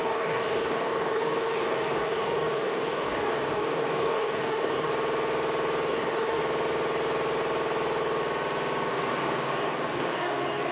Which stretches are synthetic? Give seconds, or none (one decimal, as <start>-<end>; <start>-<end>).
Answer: 0.0-4.9; 5.9-6.4; 8.9-10.7